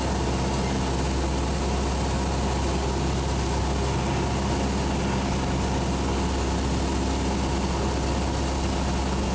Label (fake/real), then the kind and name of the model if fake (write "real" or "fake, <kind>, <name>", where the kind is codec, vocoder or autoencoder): real